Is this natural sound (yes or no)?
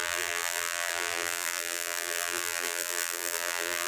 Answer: no